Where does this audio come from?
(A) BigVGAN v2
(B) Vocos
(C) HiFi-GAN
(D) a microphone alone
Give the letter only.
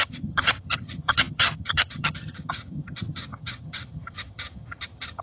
C